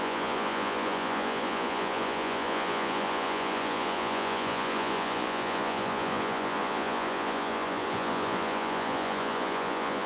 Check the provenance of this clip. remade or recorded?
remade